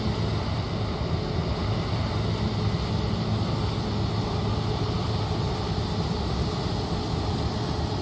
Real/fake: real